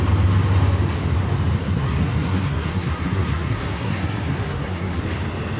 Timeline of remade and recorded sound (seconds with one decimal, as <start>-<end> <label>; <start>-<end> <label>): 0.0-1.6 recorded; 1.6-5.0 remade; 5.0-5.6 recorded